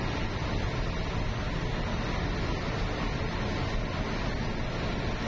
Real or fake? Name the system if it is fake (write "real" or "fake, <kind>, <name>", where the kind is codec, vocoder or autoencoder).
real